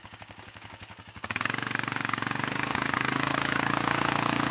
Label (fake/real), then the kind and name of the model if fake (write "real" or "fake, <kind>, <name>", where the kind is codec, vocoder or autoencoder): fake, codec, DAC